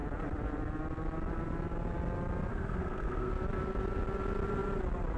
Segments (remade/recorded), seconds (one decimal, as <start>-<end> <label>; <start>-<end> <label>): 0.0-2.5 recorded; 2.5-3.3 remade; 3.3-5.2 recorded